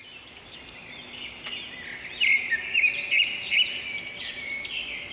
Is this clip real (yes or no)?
yes